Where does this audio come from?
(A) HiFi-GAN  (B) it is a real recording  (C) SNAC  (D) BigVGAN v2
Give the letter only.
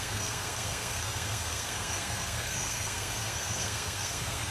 C